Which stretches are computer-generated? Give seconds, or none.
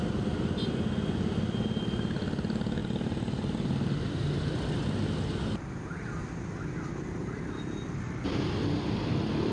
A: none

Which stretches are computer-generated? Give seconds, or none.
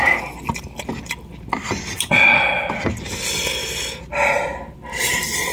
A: none